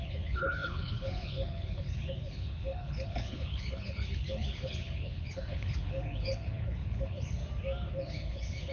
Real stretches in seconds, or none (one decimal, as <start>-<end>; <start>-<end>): 7.4-7.9